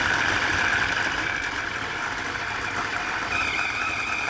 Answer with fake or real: real